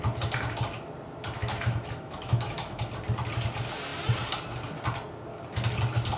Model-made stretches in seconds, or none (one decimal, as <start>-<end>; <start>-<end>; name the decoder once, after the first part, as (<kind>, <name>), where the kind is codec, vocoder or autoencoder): 1.4-2.8 (autoencoder, DAC-VAE)